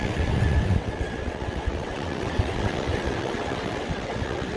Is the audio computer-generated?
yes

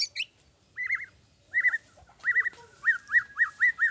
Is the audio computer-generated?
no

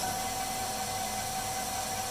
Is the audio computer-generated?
no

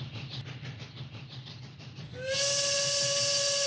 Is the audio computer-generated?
no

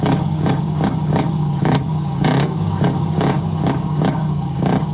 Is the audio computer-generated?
yes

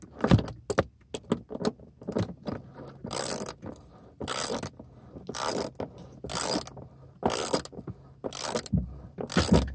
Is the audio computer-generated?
no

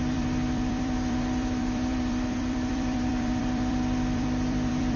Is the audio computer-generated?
yes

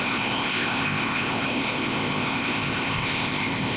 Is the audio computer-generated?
yes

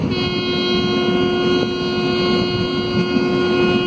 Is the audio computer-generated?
no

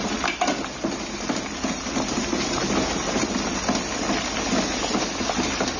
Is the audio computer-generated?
no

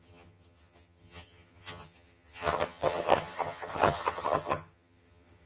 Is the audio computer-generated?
yes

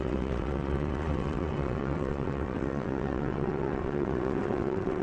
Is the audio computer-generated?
yes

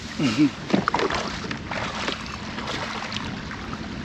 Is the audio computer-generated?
no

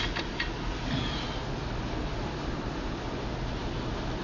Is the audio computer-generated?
no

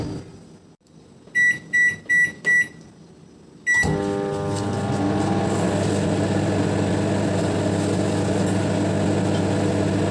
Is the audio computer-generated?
no